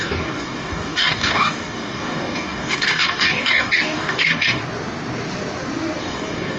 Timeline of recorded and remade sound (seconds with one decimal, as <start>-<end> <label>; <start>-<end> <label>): 0.0-4.6 remade; 4.6-6.0 recorded; 6.0-6.6 remade